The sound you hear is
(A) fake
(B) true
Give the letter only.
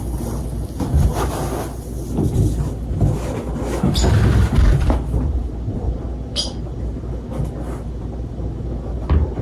B